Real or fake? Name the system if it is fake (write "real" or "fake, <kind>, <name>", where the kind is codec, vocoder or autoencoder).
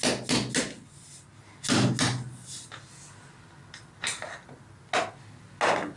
real